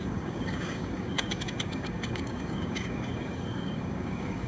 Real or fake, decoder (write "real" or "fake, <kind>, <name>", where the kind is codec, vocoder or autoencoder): fake, codec, DAC